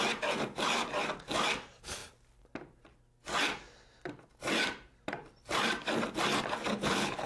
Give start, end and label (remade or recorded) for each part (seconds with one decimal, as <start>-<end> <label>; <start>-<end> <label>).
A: 0.0-6.7 recorded; 6.7-7.3 remade